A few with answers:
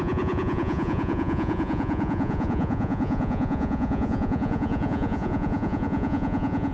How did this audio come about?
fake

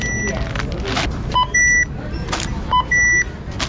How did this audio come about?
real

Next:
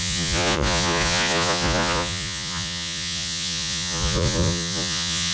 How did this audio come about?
fake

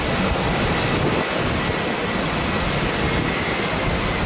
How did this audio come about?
real